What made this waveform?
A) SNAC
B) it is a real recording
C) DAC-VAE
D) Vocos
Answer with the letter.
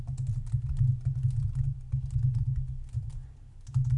B